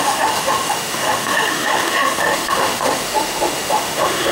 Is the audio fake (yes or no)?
yes